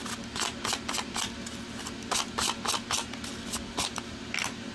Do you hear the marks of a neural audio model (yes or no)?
no